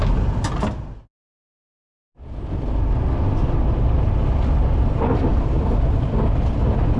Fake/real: real